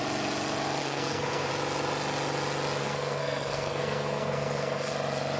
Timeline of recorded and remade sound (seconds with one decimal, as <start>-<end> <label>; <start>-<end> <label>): 0.0-0.8 recorded; 0.8-1.5 remade; 1.5-2.8 recorded; 2.8-4.9 remade; 4.9-5.4 recorded